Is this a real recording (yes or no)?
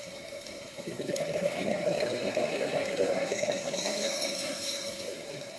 no